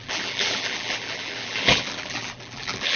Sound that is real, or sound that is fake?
fake